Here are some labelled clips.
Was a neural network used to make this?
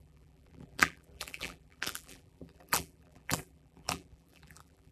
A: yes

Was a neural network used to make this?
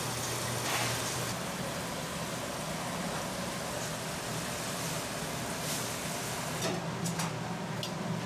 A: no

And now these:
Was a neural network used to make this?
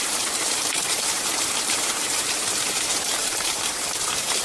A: yes